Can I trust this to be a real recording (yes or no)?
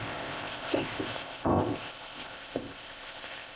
no